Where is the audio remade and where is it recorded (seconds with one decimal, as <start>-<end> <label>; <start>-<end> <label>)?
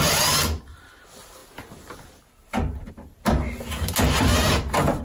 0.0-5.0 recorded